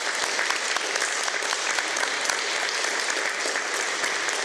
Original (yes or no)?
yes